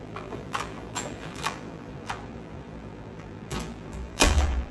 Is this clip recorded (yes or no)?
no